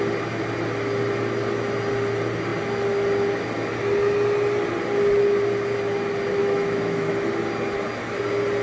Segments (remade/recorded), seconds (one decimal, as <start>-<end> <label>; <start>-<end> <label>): 0.0-6.4 recorded; 6.4-7.1 remade; 7.1-8.6 recorded